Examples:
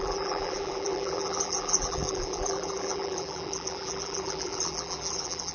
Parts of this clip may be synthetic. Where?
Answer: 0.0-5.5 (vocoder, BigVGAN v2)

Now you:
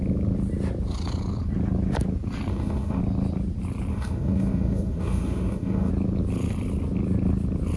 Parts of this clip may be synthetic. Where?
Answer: 2.5-3.0 (autoencoder, DAC-VAE); 3.9-5.9